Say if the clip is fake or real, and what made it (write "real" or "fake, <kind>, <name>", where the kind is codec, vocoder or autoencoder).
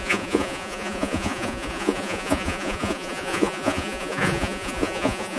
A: fake, vocoder, Vocos